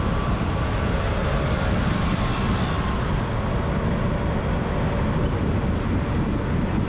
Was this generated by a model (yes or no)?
no